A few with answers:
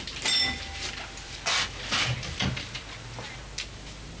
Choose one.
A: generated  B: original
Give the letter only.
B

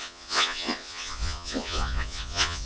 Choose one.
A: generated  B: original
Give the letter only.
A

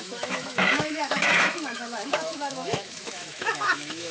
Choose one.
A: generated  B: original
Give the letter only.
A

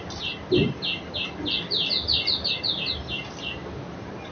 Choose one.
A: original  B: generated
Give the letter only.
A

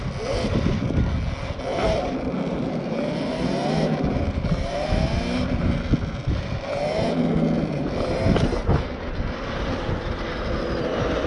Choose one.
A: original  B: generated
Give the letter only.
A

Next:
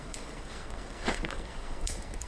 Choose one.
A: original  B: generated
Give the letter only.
B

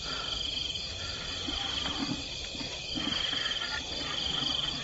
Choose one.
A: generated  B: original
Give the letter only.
B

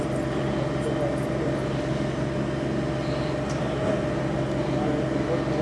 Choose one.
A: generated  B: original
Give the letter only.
B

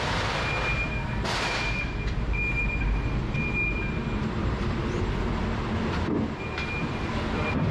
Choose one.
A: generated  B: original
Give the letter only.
A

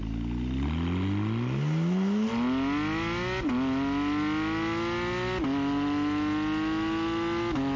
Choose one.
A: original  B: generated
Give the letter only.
A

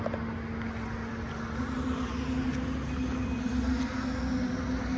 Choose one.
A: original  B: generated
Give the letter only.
A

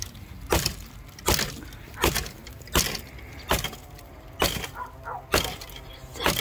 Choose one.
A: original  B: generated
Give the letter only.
A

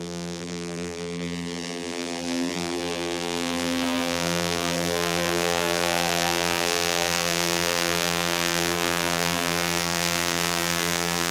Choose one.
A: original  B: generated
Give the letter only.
B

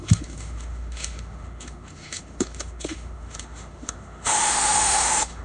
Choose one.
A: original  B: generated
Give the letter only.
B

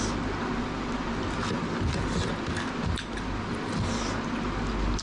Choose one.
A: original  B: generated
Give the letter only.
A